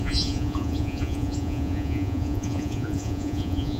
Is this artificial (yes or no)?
yes